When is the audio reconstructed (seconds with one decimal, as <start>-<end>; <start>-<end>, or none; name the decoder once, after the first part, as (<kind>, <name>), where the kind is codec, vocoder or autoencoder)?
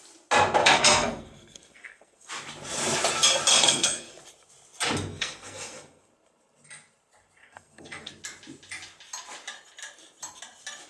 0.6-2.3 (codec, SNAC); 3.5-4.2; 5.1-6.1; 7.4-8.1